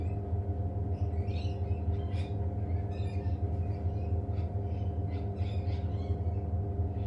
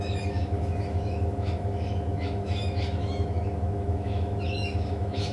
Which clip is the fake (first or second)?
second